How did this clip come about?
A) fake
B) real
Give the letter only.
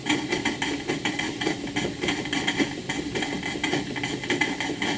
B